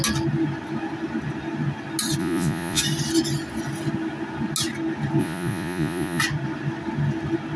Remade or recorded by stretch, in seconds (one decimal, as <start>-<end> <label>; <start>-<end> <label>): 0.0-2.2 recorded; 2.2-2.8 remade; 2.8-5.2 recorded; 5.2-6.2 remade; 6.2-7.6 recorded